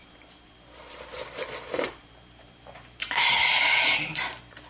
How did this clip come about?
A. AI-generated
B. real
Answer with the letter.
A